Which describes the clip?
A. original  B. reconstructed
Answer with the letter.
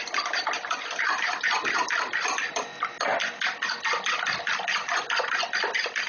A